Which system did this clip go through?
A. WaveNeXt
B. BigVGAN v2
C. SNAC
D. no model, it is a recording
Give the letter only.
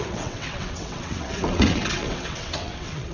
A